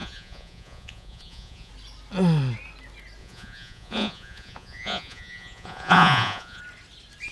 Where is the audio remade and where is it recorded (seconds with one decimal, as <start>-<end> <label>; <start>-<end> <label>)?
0.0-1.7 remade; 1.7-3.2 recorded; 3.2-6.6 remade; 6.6-7.3 recorded

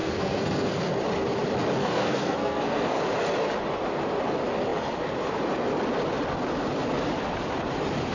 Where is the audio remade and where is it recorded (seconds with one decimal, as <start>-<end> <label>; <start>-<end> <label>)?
0.0-0.8 remade; 0.8-1.8 recorded; 1.8-3.0 remade; 3.0-8.1 recorded